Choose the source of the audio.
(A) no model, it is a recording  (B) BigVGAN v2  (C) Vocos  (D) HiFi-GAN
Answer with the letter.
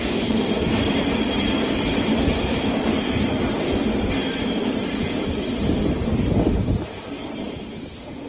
A